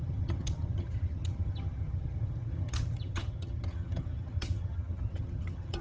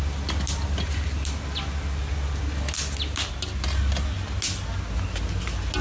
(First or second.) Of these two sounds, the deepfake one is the first